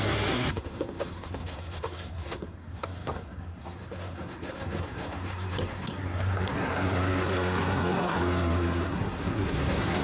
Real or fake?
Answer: fake